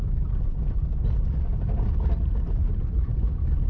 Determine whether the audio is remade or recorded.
remade